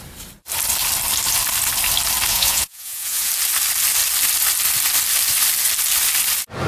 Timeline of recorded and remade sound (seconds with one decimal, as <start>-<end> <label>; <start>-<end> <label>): 0.0-2.3 recorded; 2.3-3.3 remade; 3.3-6.7 recorded